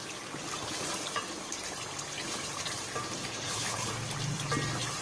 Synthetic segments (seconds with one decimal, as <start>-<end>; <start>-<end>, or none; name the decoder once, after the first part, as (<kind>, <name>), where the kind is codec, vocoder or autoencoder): 3.2-3.9 (codec, HILCodec)